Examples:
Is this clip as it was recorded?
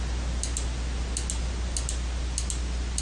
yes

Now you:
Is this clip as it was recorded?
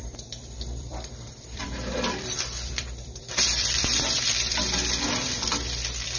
no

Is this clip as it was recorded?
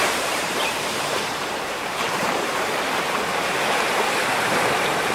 no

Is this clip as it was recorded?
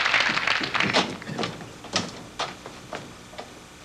yes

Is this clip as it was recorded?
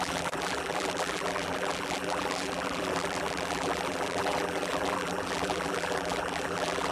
no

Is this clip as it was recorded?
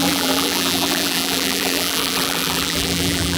no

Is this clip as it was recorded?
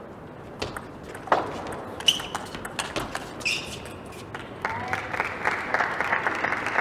yes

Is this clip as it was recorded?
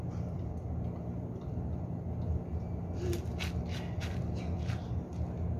yes